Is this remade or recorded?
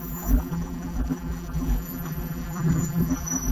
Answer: remade